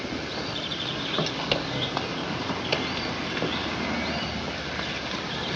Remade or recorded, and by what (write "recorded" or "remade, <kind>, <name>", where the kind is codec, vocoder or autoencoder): recorded